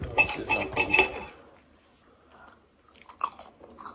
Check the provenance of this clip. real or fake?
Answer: real